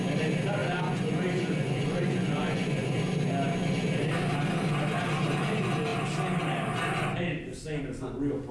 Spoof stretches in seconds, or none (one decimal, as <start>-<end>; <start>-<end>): 0.6-3.0